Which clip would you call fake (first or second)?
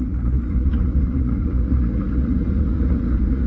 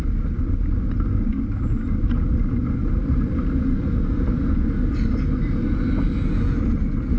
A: first